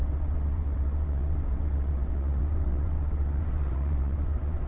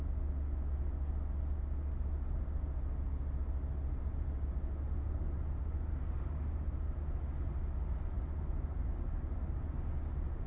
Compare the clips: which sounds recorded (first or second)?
second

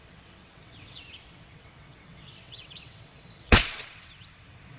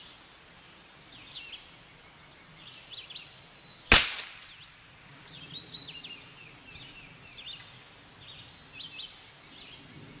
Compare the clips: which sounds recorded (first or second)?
second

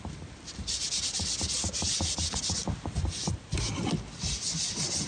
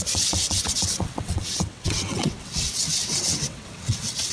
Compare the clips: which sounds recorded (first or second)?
first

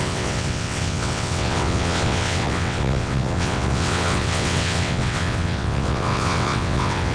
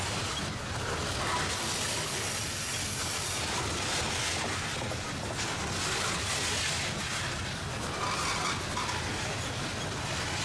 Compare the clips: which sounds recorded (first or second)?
second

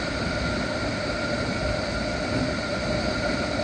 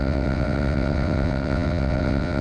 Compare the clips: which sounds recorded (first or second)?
first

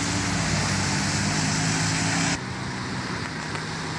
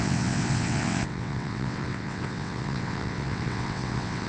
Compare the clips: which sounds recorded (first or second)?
first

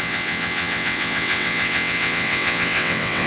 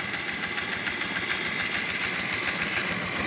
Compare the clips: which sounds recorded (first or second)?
second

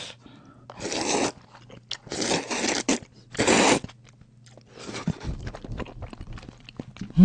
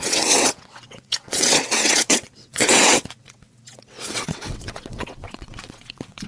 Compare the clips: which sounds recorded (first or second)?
first